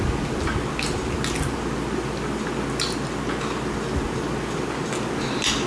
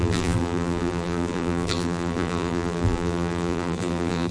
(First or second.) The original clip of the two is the first